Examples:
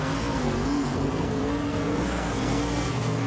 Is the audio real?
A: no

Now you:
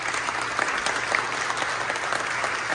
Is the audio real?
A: yes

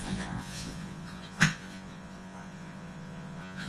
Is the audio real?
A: no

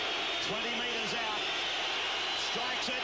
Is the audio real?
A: yes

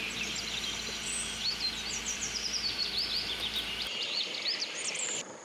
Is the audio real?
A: no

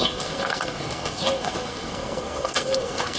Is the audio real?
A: no